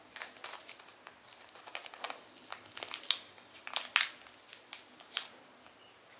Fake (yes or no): no